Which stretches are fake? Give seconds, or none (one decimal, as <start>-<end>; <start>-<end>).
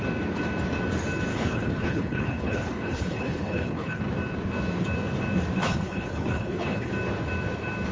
1.3-4.0; 5.6-6.9